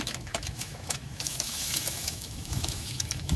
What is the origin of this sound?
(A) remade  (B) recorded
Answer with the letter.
A